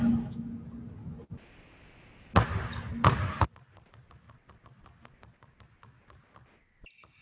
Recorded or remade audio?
recorded